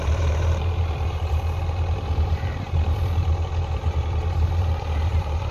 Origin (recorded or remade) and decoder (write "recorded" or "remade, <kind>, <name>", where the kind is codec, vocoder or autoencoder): remade, vocoder, BigVGAN v2